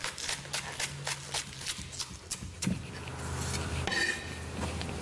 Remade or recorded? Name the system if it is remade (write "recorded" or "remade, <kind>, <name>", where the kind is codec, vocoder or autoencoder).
recorded